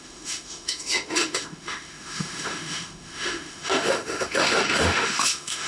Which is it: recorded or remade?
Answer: remade